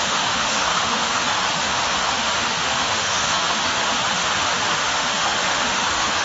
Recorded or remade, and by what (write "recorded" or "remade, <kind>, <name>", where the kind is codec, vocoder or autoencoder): remade, autoencoder, DAC-VAE